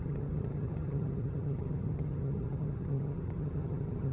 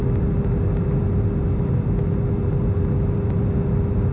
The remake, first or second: first